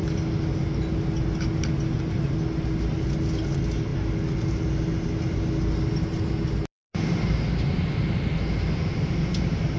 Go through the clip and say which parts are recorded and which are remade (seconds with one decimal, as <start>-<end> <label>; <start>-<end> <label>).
0.0-9.8 recorded